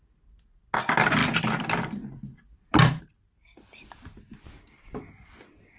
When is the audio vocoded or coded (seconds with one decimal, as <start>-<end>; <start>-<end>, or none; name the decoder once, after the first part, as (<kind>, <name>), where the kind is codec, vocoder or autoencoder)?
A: none